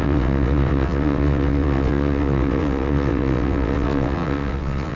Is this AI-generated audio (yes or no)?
yes